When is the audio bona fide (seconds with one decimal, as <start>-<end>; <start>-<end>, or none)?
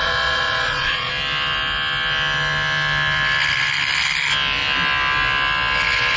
1.1-6.2